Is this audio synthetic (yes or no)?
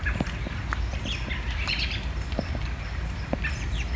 yes